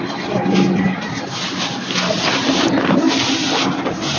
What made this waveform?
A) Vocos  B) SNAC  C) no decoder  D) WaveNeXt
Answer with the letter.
C